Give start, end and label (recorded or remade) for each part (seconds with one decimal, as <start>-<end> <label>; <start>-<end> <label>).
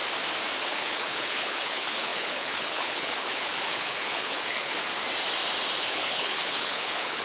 0.0-0.6 recorded; 0.6-4.8 remade; 4.8-5.9 recorded; 5.9-7.2 remade